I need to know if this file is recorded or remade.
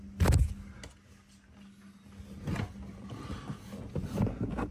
recorded